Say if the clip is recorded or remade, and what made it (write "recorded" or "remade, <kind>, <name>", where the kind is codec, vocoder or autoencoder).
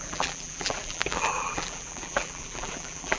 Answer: remade, vocoder, BigVGAN v2